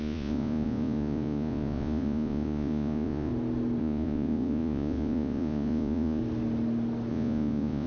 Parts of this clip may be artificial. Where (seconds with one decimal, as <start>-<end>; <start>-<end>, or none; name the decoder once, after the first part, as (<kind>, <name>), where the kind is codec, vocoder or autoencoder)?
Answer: 0.0-3.3 (vocoder, Vocos); 3.8-6.2; 7.1-7.9